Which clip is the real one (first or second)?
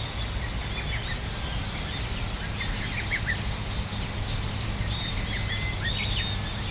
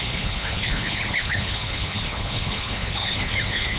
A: first